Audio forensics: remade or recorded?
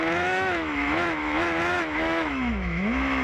remade